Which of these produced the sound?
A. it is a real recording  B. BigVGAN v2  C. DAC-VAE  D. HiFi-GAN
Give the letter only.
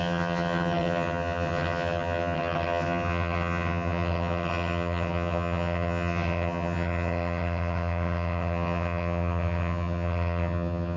D